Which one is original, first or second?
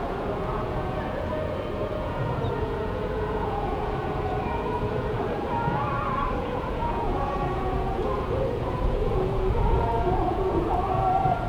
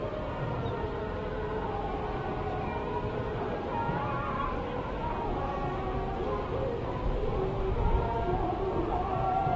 second